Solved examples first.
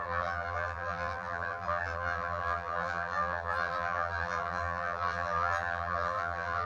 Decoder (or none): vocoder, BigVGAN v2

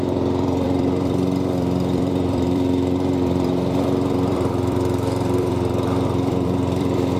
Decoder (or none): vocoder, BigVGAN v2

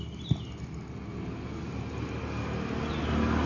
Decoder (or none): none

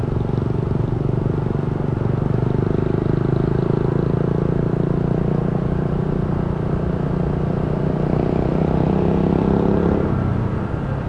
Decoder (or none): none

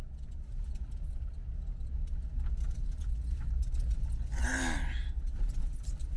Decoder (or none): none